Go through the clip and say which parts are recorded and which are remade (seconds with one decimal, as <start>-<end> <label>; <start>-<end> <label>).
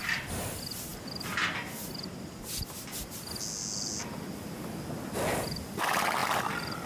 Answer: 0.0-6.9 recorded